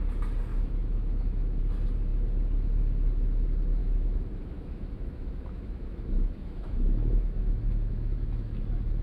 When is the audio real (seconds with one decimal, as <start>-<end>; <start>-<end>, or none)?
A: 0.0-0.5; 1.6-3.8; 8.6-9.0